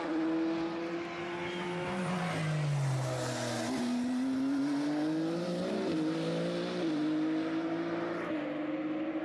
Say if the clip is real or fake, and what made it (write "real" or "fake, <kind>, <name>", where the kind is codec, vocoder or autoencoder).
real